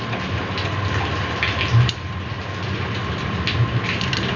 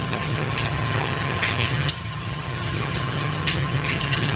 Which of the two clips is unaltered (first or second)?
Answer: first